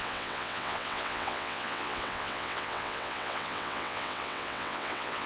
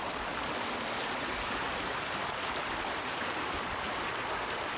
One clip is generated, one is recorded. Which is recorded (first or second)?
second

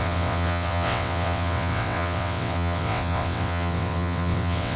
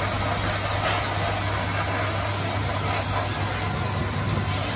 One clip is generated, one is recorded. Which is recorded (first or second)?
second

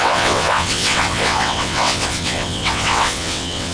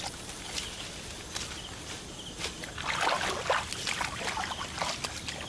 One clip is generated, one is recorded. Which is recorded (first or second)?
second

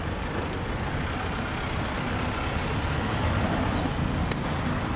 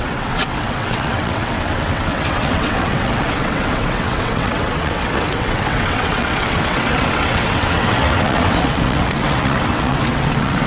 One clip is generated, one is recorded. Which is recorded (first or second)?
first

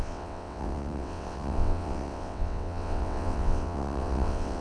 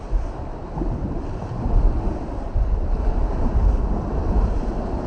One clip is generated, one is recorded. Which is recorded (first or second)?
second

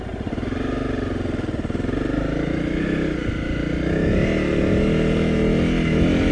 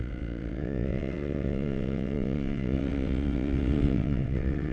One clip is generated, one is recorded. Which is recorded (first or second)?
first